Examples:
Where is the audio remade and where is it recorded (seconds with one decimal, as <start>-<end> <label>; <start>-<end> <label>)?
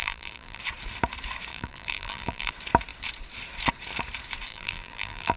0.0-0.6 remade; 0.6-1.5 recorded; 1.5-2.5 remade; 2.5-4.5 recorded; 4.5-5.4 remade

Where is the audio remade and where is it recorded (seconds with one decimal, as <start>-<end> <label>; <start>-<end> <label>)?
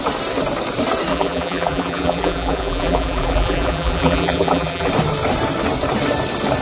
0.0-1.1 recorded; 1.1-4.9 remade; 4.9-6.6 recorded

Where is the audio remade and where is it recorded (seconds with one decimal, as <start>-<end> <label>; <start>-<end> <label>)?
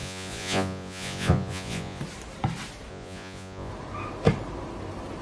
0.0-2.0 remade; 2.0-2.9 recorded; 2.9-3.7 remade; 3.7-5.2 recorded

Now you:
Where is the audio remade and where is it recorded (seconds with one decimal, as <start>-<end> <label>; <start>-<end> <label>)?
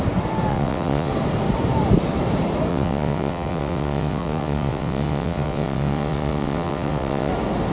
0.0-0.5 recorded; 0.5-1.1 remade; 1.1-2.7 recorded; 2.7-7.3 remade; 7.3-7.7 recorded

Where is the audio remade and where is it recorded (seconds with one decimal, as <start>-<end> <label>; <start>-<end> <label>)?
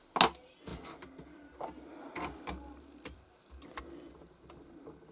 0.0-0.7 recorded; 0.7-3.8 remade; 3.8-5.1 recorded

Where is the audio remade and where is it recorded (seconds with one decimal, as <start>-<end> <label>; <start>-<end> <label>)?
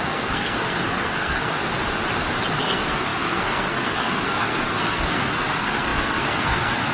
0.0-1.6 remade; 1.6-2.6 recorded; 2.6-6.9 remade